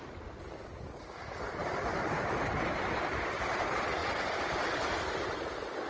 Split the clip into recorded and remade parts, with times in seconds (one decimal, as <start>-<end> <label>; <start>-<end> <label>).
0.0-1.6 recorded; 1.6-3.5 remade; 3.5-5.9 recorded